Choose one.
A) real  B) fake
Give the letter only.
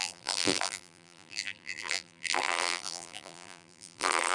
B